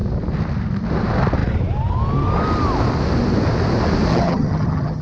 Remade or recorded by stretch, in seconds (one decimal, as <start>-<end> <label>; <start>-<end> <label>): 0.0-4.1 recorded; 4.1-5.0 remade